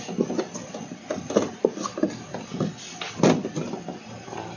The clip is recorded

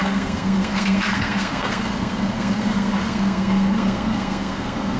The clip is remade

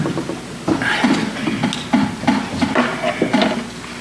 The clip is recorded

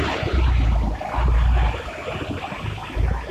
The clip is recorded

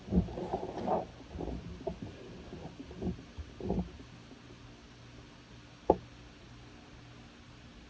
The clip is recorded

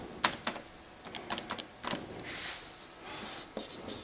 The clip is recorded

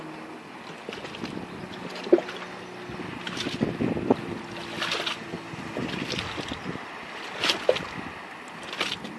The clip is recorded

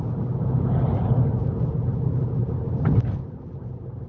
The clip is recorded